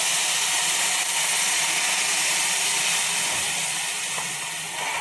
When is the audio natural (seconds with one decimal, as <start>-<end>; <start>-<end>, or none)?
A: 0.0-5.0